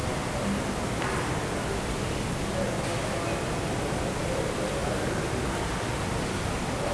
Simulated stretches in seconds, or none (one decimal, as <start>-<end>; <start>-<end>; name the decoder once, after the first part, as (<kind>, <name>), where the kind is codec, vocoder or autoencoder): none